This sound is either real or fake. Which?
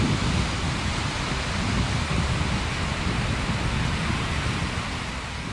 real